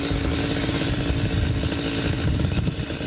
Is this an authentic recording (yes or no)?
yes